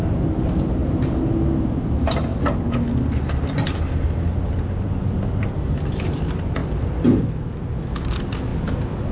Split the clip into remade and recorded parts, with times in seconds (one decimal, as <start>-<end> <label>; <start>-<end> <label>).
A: 0.0-0.8 remade; 0.8-1.8 recorded; 1.8-2.3 remade; 2.3-4.8 recorded; 4.8-8.5 remade; 8.5-9.1 recorded